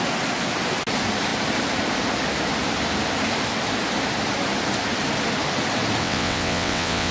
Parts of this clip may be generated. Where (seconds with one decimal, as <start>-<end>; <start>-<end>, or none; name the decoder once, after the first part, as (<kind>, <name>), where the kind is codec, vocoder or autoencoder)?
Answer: 6.0-7.1 (vocoder, WaveNeXt)